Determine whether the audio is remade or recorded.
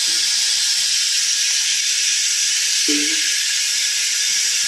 remade